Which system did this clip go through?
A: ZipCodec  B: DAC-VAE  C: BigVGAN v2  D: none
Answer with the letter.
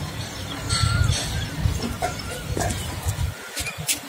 D